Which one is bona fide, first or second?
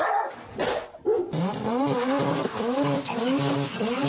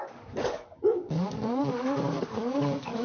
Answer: first